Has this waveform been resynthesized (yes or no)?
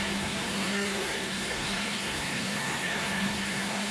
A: yes